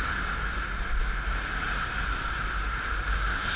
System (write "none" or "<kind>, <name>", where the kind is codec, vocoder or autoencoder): none